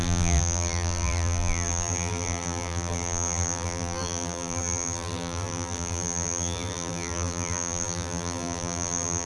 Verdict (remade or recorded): remade